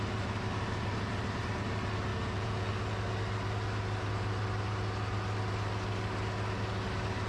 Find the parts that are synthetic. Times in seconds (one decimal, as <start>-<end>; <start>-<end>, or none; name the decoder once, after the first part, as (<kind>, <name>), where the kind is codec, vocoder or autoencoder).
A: 2.1-2.7 (vocoder, Vocos)

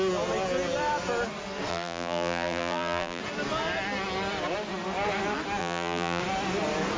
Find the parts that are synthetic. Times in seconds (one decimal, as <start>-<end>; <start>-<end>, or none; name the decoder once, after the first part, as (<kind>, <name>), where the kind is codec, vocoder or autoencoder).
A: 1.7-3.2 (vocoder, BigVGAN v2); 5.6-6.2